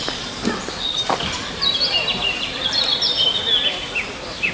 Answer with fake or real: fake